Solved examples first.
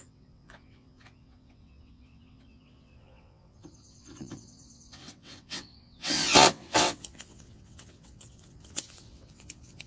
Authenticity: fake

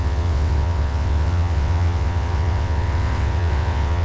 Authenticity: fake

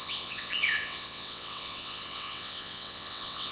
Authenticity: fake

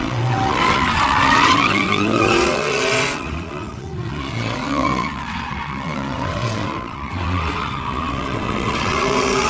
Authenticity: fake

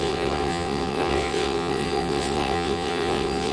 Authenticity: fake